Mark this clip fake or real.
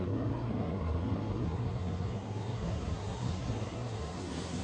fake